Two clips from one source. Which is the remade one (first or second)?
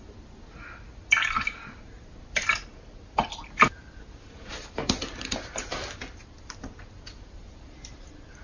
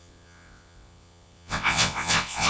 second